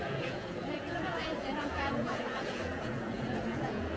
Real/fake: fake